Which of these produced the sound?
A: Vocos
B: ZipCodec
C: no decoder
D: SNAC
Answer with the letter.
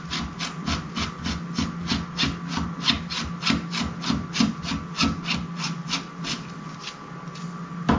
C